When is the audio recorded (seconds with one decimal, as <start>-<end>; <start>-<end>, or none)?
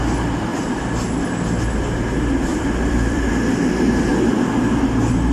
0.0-2.5; 3.3-5.3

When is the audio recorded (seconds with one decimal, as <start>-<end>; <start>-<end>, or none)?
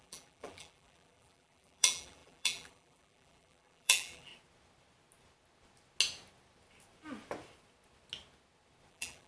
4.3-8.9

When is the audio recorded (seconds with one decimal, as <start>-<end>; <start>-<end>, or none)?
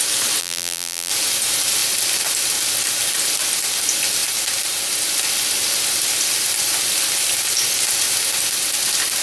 0.0-0.4; 1.1-9.2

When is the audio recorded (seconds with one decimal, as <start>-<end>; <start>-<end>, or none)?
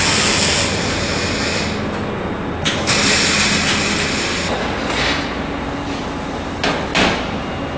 0.0-7.8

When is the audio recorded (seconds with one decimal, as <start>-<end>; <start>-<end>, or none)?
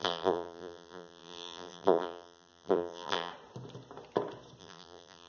3.3-4.6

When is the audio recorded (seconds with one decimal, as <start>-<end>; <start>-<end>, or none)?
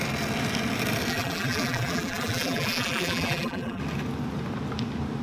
0.0-1.1; 3.8-5.2